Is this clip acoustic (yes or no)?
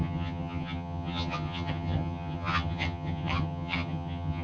no